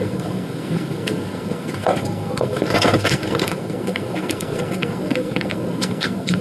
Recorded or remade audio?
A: remade